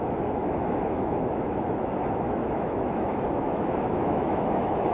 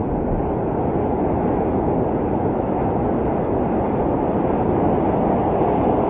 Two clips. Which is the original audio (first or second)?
second